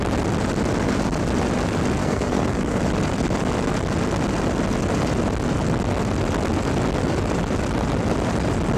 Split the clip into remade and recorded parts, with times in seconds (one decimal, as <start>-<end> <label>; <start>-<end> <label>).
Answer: 0.0-2.0 recorded; 2.0-2.8 remade; 2.8-8.8 recorded